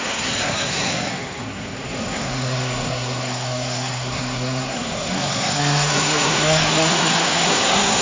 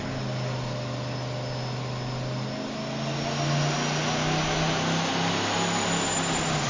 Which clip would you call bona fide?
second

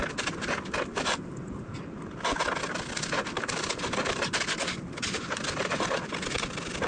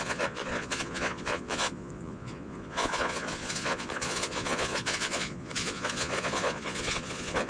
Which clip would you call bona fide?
first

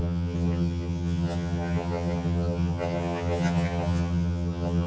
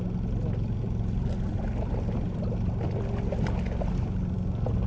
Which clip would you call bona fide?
second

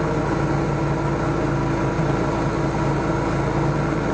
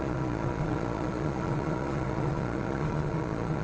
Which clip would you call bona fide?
first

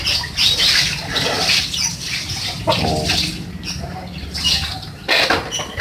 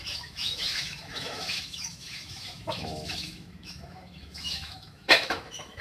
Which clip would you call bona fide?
first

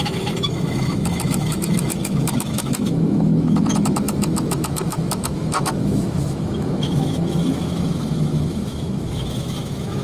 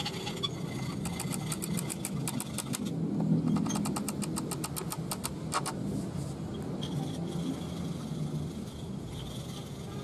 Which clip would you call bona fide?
second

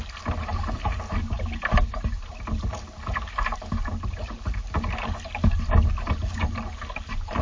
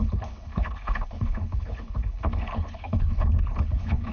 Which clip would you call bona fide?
first